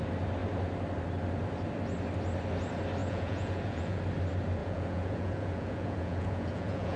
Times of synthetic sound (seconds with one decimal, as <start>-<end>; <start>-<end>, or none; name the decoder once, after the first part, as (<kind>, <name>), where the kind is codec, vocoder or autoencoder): 3.0-4.0 (vocoder, Vocos); 4.6-7.0